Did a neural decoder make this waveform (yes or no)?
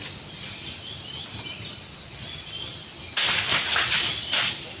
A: no